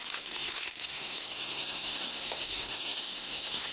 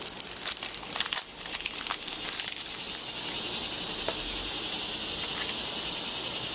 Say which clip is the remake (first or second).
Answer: first